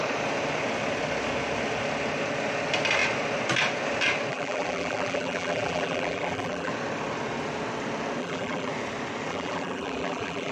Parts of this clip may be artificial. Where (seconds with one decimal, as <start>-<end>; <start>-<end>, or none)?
4.3-6.7; 8.2-8.7; 9.3-10.5